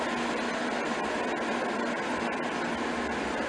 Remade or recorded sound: recorded